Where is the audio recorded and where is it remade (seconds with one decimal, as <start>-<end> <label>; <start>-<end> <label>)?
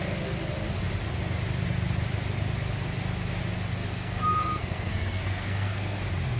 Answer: 0.0-3.8 recorded; 3.8-6.0 remade; 6.0-6.4 recorded